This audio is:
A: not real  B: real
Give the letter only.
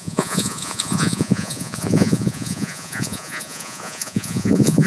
A